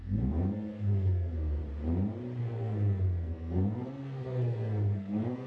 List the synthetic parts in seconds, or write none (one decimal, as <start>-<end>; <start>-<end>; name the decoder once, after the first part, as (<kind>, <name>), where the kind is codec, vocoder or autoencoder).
0.0-1.6 (codec, SNAC); 2.4-5.5

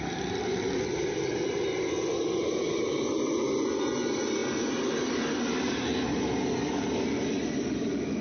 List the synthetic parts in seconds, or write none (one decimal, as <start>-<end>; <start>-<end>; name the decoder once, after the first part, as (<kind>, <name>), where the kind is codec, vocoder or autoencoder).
none